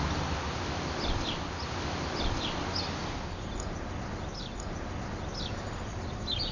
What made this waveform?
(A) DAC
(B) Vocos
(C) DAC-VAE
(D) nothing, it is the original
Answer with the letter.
D